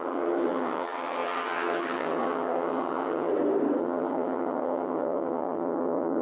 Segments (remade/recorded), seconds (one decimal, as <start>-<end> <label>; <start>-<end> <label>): 0.0-3.3 remade; 3.3-3.8 recorded; 3.8-6.2 remade